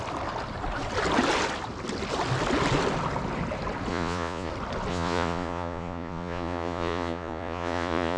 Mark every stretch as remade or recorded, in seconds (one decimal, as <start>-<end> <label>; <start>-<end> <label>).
0.0-3.9 recorded; 3.9-4.5 remade; 4.5-4.9 recorded; 4.9-8.2 remade